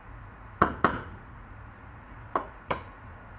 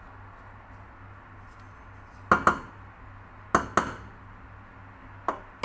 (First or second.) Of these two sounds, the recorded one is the second